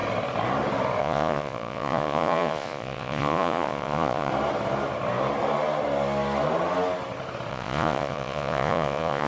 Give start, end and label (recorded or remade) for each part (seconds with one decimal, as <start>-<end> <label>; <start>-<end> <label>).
0.0-1.0 recorded; 1.0-4.3 remade; 4.3-7.5 recorded; 7.5-9.3 remade